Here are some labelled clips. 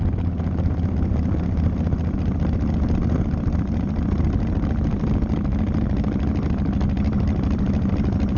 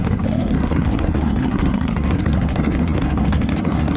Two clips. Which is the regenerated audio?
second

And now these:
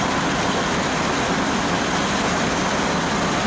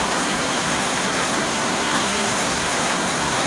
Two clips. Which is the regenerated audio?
second